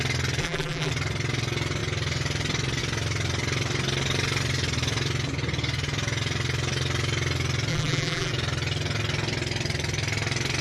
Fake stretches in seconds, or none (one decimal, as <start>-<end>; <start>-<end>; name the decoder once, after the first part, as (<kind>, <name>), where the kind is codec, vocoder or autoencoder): 0.4-0.9 (vocoder, BigVGAN v2); 7.7-8.3